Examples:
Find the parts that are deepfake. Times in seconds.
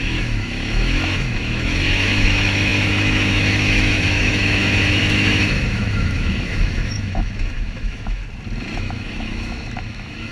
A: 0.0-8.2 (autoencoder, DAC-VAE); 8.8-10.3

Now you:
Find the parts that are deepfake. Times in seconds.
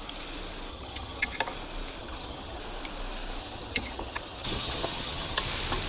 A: 0.7-1.4 (vocoder, HiFi-GAN); 2.0-2.6; 3.4-5.4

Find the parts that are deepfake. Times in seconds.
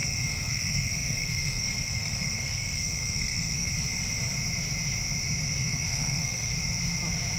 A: 0.0-3.7 (codec, SNAC); 5.6-6.5